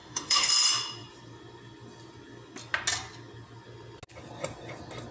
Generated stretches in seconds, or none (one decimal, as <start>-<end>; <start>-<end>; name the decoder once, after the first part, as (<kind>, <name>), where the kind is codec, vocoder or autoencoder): 0.0-0.5 (autoencoder, DAC-VAE)